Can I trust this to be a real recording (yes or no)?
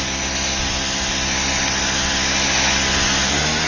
yes